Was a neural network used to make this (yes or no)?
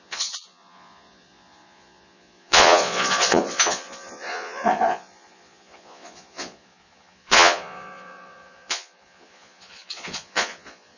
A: yes